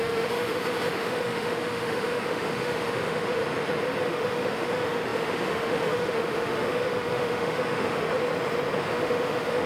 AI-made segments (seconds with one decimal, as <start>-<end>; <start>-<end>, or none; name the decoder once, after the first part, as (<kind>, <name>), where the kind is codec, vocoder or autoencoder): 0.0-3.4 (autoencoder, DAC-VAE); 4.0-8.1; 8.9-9.7